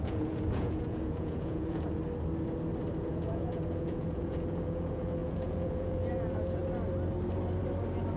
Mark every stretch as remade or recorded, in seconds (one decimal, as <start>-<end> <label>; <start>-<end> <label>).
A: 0.0-2.0 remade; 2.0-3.0 recorded; 3.0-6.6 remade; 6.6-8.2 recorded